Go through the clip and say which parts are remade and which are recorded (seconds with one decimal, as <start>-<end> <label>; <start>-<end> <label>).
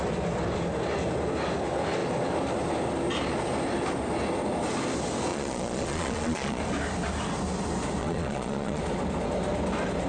0.0-5.3 recorded; 5.3-6.6 remade; 6.6-8.0 recorded; 8.0-8.8 remade; 8.8-10.1 recorded